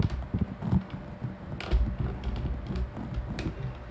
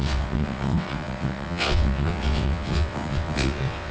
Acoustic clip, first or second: first